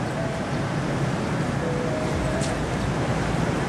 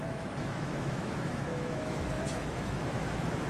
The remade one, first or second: second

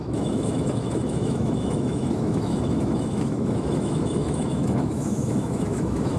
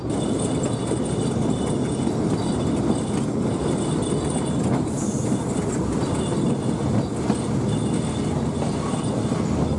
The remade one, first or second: first